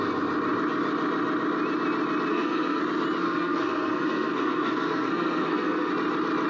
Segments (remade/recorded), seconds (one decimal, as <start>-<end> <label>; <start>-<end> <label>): 0.0-2.3 recorded; 2.3-2.8 remade; 2.8-3.2 recorded; 3.2-5.9 remade; 5.9-6.5 recorded